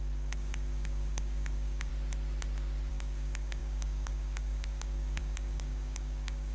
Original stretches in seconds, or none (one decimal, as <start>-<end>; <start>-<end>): 1.9-2.9